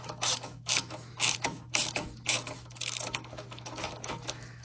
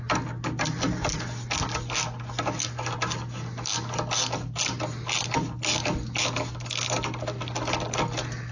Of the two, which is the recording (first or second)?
second